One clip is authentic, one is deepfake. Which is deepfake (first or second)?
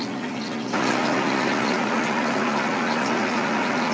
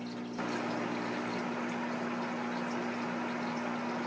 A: first